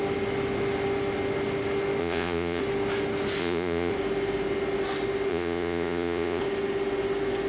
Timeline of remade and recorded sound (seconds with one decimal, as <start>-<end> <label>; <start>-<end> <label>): 0.0-2.0 recorded; 2.0-2.6 remade; 2.6-3.4 recorded; 3.4-3.9 remade; 3.9-5.3 recorded; 5.3-6.4 remade; 6.4-7.5 recorded